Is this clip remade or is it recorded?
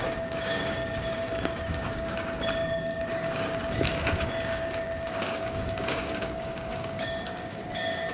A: remade